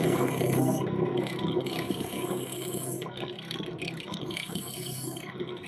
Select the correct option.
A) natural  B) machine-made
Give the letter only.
B